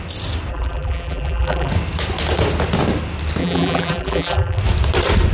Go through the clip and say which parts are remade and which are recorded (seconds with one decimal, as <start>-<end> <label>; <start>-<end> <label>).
0.0-0.5 recorded; 0.5-1.7 remade; 1.7-3.4 recorded; 3.4-4.6 remade; 4.6-5.3 recorded